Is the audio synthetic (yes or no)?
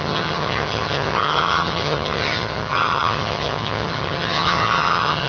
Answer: yes